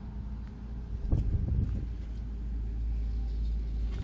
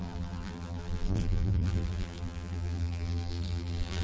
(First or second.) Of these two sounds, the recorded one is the first